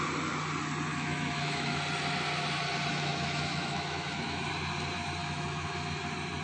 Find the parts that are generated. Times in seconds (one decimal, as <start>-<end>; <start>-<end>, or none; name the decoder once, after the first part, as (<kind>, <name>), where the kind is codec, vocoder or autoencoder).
0.9-1.8 (autoencoder, DAC-VAE); 2.9-4.5; 5.2-6.0